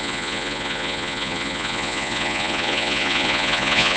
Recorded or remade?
remade